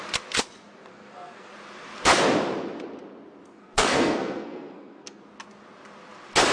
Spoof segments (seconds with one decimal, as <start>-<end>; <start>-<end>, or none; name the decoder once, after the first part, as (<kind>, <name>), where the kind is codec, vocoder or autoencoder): 0.9-1.5 (codec, SNAC); 3.5-5.2